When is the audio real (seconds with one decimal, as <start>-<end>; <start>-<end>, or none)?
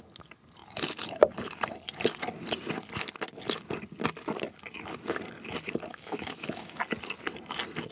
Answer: 0.0-5.9; 6.8-7.9